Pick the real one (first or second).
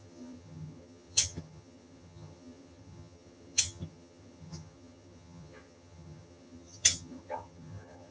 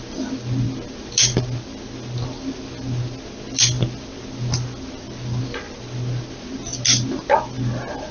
second